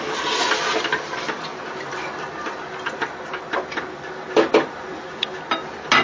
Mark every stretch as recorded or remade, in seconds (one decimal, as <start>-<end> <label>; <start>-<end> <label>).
0.0-1.5 recorded; 1.5-5.1 remade; 5.1-6.0 recorded